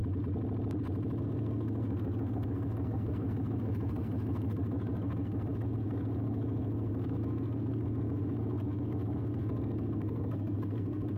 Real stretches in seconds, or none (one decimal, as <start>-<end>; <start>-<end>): 0.0-1.2